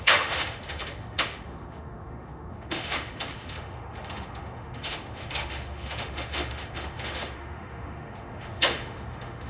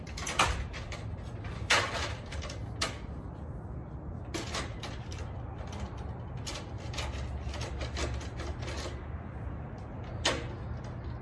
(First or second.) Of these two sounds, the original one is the second